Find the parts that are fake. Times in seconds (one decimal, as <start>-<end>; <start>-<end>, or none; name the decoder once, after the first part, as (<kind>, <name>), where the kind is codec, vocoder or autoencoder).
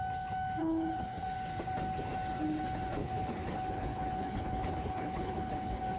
0.6-1.2 (codec, HILCodec); 3.0-6.0